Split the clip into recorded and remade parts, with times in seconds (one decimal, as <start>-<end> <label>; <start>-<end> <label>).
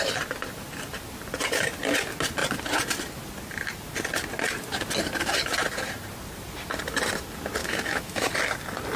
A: 0.0-7.6 recorded; 7.6-8.3 remade; 8.3-9.0 recorded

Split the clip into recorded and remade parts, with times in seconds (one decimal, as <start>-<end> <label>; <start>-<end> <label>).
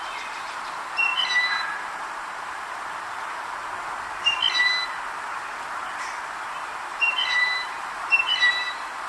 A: 0.0-1.1 recorded; 1.1-3.7 remade; 3.7-6.9 recorded; 6.9-8.5 remade; 8.5-9.1 recorded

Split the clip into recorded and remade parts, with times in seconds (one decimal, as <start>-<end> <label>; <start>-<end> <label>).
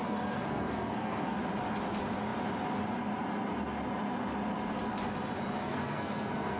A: 0.0-1.4 remade; 1.4-5.6 recorded; 5.6-6.6 remade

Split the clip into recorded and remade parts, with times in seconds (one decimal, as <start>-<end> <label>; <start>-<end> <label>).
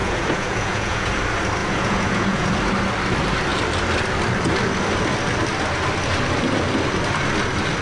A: 0.0-1.2 remade; 1.2-1.6 recorded; 1.6-2.5 remade; 2.5-7.8 recorded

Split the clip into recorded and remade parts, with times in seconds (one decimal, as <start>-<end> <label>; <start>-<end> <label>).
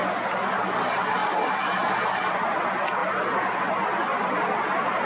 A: 0.0-5.1 recorded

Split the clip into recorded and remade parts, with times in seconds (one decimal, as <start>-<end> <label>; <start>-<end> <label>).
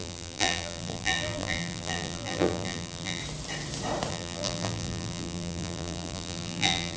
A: 0.0-3.2 remade; 3.2-4.1 recorded; 4.1-7.0 remade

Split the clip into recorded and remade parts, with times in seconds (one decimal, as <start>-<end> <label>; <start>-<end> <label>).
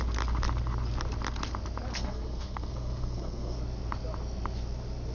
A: 0.0-1.9 recorded; 1.9-3.6 remade; 3.6-5.1 recorded